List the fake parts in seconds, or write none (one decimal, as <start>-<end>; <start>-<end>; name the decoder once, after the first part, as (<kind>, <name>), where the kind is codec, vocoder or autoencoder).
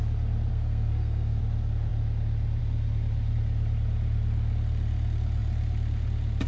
0.5-1.4 (codec, SNAC)